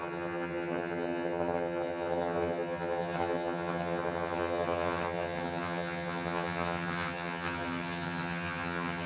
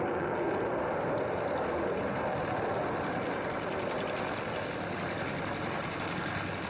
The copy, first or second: first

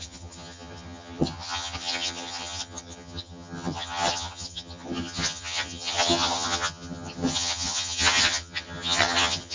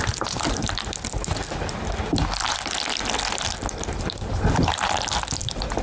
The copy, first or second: first